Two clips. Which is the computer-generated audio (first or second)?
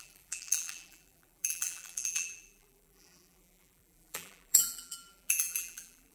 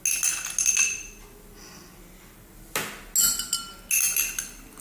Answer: first